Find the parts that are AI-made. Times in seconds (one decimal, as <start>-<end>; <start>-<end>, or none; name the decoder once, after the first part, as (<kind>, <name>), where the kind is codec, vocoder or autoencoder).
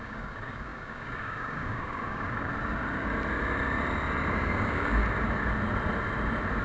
0.0-2.5 (codec, DAC); 4.3-5.0